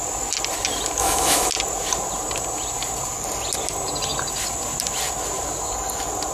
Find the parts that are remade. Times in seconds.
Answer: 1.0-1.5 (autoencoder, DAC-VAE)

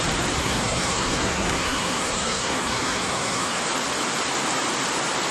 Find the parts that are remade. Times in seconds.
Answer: 0.4-3.6 (codec, SNAC)

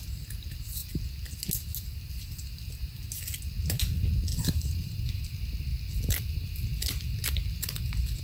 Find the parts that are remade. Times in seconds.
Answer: 4.3-5.2 (vocoder, BigVGAN v2)

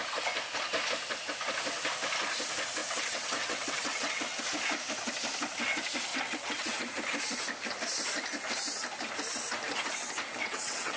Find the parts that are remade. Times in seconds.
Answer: 2.8-4.4 (vocoder, WaveNeXt); 6.1-6.8; 10.4-11.0

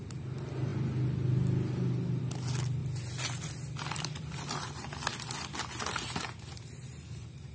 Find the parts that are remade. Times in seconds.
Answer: 2.8-5.7 (vocoder, BigVGAN v2)